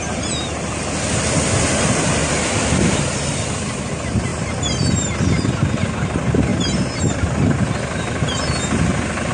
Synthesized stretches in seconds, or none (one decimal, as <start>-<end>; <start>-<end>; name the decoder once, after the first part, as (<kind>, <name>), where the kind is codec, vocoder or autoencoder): none